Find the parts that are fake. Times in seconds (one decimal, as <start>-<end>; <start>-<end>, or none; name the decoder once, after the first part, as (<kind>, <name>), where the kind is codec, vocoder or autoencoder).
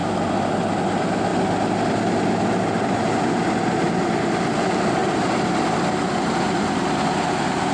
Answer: 0.0-0.5 (vocoder, BigVGAN v2); 5.0-5.7